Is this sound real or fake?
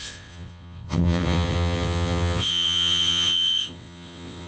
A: fake